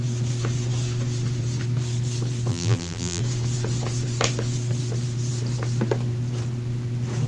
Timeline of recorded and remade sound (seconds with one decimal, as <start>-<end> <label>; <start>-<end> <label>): 0.0-2.5 recorded; 2.5-3.2 remade; 3.2-7.3 recorded